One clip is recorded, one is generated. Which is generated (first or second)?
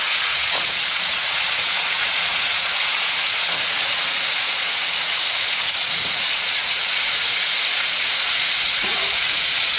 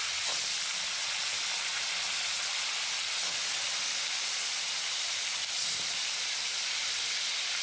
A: first